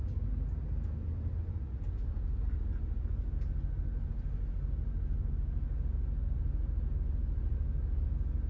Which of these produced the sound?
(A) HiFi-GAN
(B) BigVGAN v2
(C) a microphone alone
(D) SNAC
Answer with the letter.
C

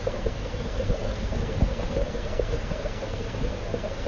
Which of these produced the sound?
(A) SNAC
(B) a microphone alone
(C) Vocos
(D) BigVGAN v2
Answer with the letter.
A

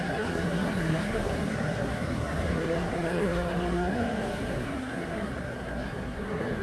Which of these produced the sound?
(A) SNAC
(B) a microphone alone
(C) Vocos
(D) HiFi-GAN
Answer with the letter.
A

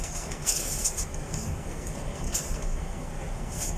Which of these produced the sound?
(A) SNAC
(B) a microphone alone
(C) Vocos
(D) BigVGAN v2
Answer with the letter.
A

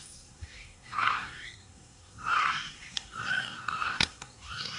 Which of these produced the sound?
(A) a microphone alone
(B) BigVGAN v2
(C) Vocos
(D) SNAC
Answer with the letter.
D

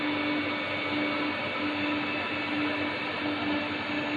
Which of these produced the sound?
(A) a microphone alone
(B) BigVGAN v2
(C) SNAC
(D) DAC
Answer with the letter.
A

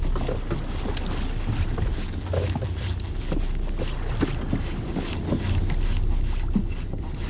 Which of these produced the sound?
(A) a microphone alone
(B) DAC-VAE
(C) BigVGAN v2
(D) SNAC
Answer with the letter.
A